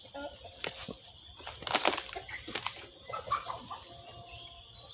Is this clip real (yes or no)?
yes